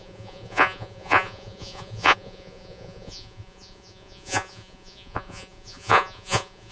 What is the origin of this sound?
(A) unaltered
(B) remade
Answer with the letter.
B